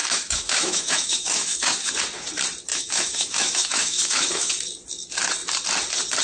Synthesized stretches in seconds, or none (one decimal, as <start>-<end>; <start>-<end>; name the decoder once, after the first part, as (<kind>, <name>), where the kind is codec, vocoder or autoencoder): 0.0-1.9 (autoencoder, DAC-VAE); 2.7-4.5